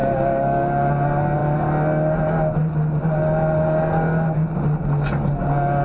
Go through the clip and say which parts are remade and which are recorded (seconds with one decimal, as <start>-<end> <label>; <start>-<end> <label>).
0.0-0.9 remade; 0.9-5.8 recorded